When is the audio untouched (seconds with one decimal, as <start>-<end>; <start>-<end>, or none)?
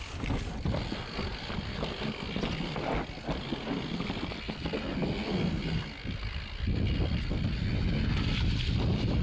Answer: 0.0-9.2